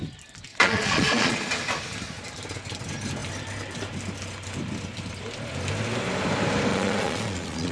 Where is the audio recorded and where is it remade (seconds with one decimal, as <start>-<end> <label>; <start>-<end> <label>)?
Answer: 0.0-0.5 recorded; 0.5-1.5 remade; 1.5-6.7 recorded; 6.7-7.7 remade